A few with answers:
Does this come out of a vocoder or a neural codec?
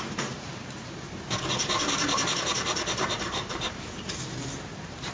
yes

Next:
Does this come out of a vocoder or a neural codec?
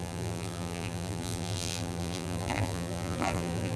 yes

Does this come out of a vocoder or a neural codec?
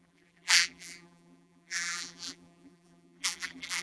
yes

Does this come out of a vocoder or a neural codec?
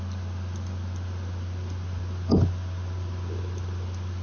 no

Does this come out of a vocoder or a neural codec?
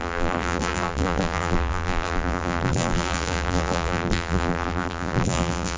yes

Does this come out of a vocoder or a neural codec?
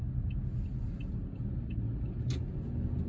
no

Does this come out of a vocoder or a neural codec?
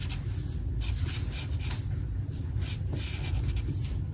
no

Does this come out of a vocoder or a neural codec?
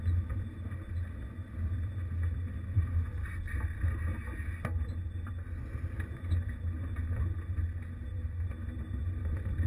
no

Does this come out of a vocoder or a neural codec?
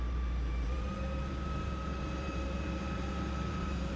yes